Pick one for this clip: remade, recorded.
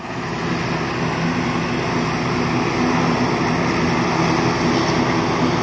recorded